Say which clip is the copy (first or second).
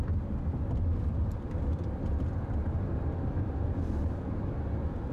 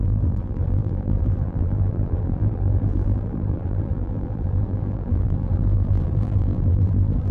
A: second